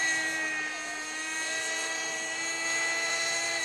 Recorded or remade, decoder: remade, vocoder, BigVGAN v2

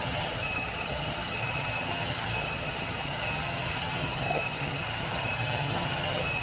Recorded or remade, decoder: remade, vocoder, HiFi-GAN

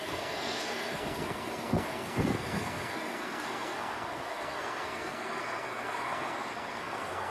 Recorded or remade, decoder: remade, codec, SNAC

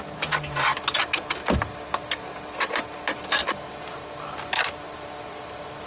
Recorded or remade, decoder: recorded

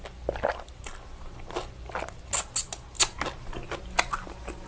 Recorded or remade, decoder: recorded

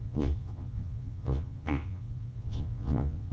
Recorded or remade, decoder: remade, vocoder, Vocos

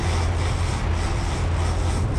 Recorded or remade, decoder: recorded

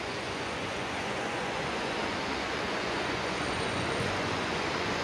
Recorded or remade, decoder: remade, vocoder, Vocos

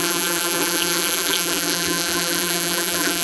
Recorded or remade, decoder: remade, vocoder, BigVGAN v2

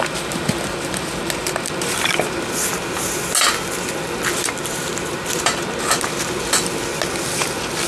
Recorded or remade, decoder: recorded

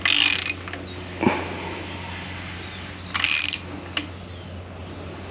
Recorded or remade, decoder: recorded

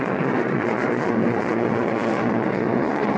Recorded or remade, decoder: remade, vocoder, Vocos